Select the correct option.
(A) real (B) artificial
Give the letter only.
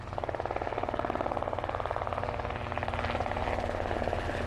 A